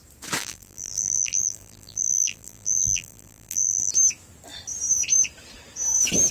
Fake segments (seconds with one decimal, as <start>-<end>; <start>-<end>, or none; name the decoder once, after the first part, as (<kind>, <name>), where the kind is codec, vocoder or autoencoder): 0.4-3.9 (vocoder, BigVGAN v2)